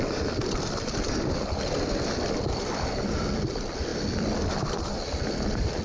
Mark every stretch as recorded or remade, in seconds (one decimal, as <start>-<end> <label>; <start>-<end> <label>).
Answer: 0.0-5.8 recorded